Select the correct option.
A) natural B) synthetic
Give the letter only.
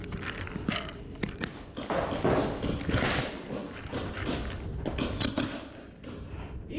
A